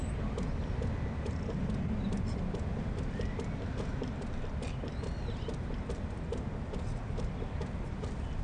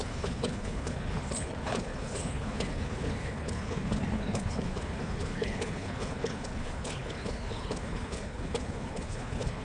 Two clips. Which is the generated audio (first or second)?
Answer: second